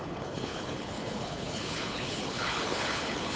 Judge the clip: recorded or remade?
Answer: remade